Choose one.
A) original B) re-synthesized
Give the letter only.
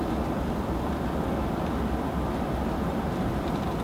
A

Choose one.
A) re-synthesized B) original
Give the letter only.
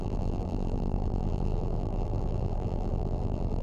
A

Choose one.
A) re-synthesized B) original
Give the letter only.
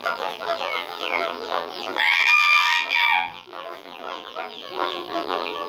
A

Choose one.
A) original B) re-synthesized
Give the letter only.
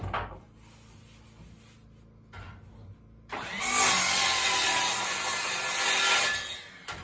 A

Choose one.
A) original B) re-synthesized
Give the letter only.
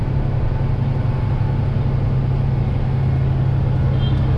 A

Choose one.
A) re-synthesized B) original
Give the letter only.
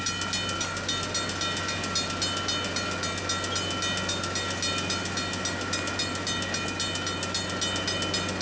B